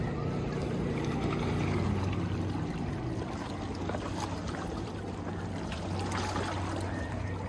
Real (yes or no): yes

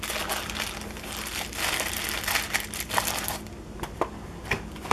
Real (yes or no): yes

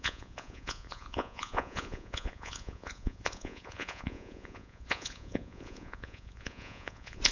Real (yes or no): no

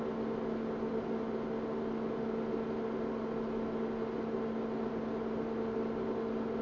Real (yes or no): yes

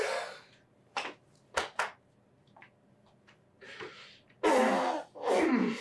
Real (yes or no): yes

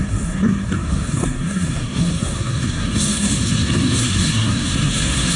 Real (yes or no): no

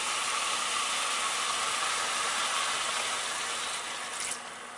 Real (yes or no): yes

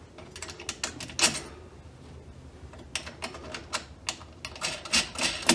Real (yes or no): yes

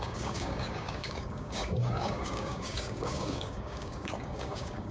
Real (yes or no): no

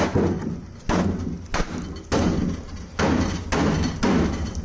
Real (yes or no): yes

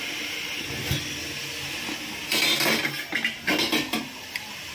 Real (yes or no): yes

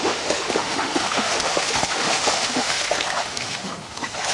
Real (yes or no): no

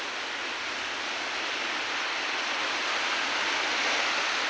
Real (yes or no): yes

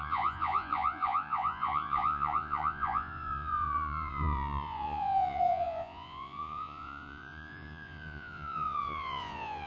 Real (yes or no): no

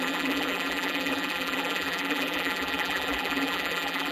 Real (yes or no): no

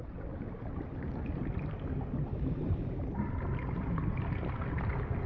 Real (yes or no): yes